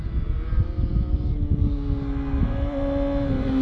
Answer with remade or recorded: recorded